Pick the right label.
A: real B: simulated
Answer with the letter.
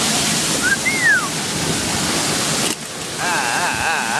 A